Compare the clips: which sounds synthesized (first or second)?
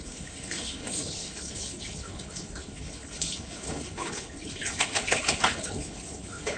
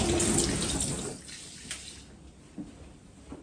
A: first